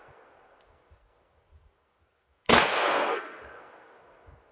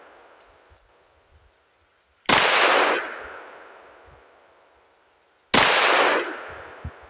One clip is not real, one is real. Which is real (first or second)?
second